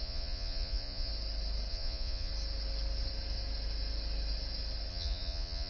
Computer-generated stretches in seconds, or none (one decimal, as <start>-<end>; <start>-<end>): 0.0-1.1; 1.7-2.3; 4.9-5.7